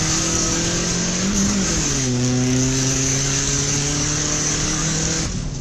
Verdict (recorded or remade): remade